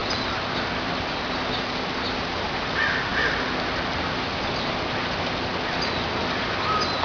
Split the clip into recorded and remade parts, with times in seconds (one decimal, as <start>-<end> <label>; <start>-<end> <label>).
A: 0.0-7.0 recorded